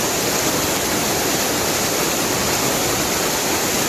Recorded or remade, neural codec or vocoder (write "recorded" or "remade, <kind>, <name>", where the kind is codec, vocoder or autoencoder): recorded